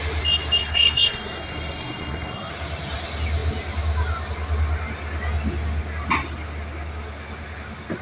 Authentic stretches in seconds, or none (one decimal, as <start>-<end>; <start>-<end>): 0.0-0.6; 2.5-8.0